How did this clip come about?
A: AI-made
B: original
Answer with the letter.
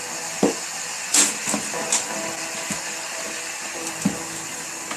B